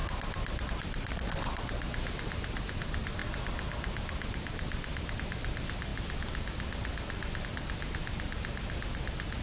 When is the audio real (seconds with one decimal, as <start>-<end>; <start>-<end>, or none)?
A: 0.0-9.4